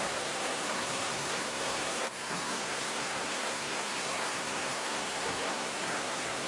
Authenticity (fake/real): fake